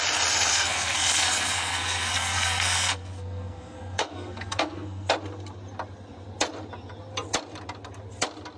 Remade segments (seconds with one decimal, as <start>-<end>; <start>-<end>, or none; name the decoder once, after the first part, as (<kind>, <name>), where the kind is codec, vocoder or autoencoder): 0.5-5.1 (codec, SNAC)